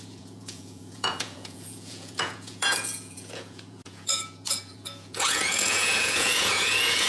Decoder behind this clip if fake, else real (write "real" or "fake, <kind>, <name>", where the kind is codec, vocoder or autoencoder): fake, vocoder, Vocos